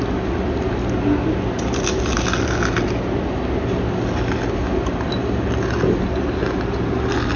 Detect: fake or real real